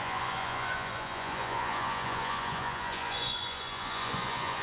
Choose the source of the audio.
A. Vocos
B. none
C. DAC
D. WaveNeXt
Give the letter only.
A